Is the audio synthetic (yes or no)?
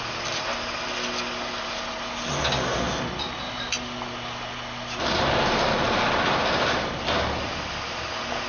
no